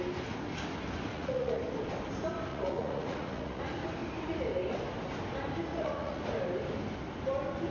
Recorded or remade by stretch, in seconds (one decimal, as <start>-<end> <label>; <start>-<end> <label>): 0.0-1.1 recorded; 1.1-1.6 remade; 1.6-2.5 recorded; 2.5-3.6 remade; 3.6-5.7 recorded; 5.7-6.2 remade; 6.2-7.7 recorded